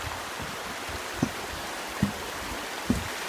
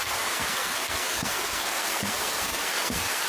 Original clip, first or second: first